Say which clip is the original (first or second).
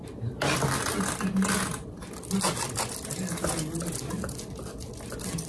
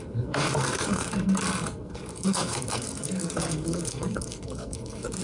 first